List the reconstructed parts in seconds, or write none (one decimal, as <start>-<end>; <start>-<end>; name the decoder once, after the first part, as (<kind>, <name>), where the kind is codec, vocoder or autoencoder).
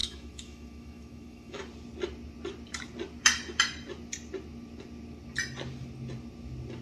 0.0-1.6 (autoencoder, DAC-VAE)